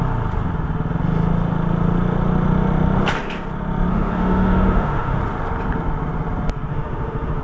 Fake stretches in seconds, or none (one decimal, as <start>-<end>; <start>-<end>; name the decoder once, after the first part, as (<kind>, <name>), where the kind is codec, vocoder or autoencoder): 3.9-5.2 (autoencoder, DAC-VAE); 6.7-7.4